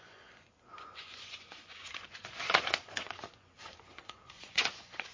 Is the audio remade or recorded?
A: remade